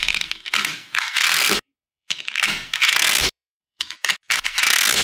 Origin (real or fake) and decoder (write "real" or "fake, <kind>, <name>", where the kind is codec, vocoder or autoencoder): fake, codec, SNAC